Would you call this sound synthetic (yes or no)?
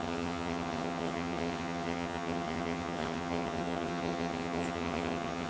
yes